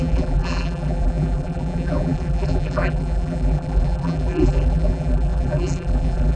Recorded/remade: remade